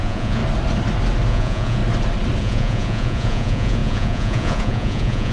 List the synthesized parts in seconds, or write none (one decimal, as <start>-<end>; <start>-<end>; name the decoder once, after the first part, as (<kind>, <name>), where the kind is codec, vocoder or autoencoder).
0.0-0.4 (vocoder, Vocos); 1.3-1.8; 2.4-5.3